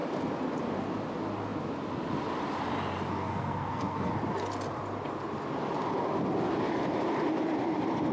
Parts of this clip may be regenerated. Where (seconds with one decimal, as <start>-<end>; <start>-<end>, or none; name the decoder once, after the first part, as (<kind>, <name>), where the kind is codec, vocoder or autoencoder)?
3.1-4.1 (codec, SNAC)